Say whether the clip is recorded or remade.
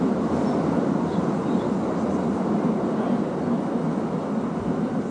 recorded